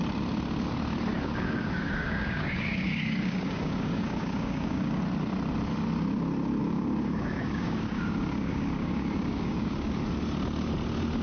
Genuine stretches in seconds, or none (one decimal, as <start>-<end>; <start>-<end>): 0.0-1.1; 5.0-6.6; 9.9-11.2